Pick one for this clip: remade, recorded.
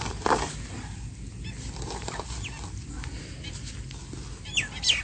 recorded